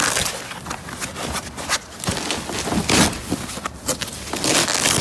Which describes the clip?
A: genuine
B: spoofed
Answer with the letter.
A